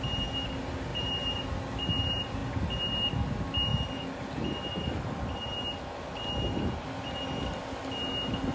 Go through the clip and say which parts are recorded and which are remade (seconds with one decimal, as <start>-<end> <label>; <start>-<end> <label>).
0.0-0.9 recorded; 0.9-1.5 remade; 1.5-8.5 recorded

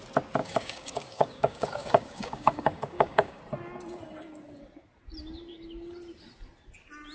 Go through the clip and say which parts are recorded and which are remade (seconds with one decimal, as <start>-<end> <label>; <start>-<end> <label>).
0.0-0.4 recorded; 0.4-3.4 remade; 3.4-7.1 recorded

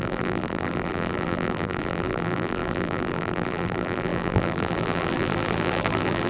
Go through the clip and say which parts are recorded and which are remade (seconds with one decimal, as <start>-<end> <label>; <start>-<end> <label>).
0.0-6.3 remade

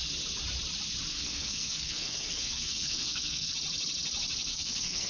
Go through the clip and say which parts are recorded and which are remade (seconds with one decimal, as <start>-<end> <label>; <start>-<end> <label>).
0.0-1.1 recorded; 1.1-3.5 remade; 3.5-4.5 recorded; 4.5-5.1 remade

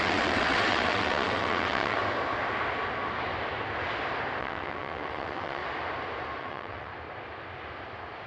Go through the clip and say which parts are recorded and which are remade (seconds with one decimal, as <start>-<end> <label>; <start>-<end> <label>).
0.0-2.0 remade; 2.0-4.4 recorded; 4.4-5.6 remade; 5.6-6.4 recorded; 6.4-6.9 remade; 6.9-8.3 recorded

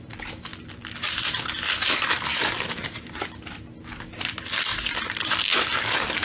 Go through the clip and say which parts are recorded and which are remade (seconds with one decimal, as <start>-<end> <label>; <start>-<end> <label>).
0.0-6.2 recorded

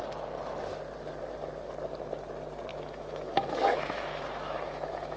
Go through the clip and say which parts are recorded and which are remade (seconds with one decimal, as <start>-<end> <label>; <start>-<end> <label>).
0.0-2.7 recorded; 2.7-5.2 remade